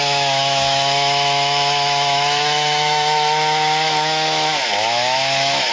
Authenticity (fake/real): fake